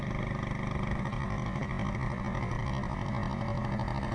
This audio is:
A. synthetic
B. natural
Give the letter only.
B